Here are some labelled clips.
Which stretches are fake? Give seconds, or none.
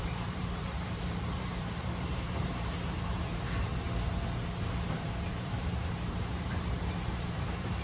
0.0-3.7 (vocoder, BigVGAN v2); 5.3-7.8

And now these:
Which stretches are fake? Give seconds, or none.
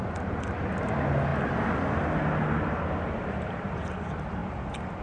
none